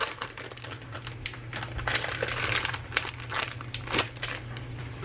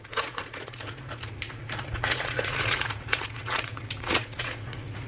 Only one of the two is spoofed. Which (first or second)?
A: second